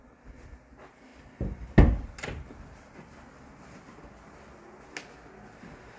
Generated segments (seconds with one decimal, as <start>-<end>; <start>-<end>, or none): none